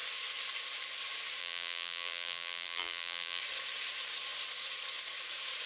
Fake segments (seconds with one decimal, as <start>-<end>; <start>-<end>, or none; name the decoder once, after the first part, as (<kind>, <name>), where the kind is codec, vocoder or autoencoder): 1.4-3.4 (vocoder, BigVGAN v2)